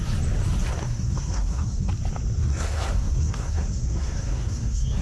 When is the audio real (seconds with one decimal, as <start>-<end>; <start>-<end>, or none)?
0.0-0.8; 1.9-2.4